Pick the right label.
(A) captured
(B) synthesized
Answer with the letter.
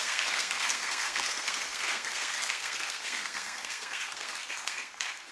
B